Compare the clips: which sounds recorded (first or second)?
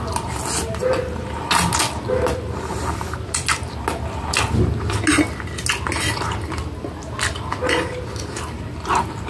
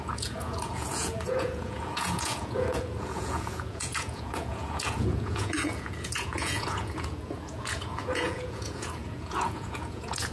first